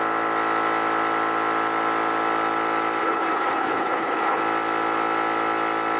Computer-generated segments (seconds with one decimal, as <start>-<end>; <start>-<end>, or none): 3.0-4.4